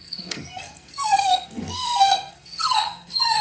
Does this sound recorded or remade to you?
remade